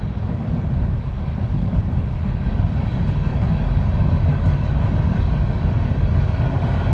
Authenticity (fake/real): fake